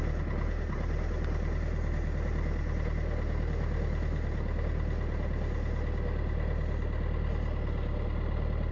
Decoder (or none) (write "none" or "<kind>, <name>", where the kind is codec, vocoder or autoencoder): none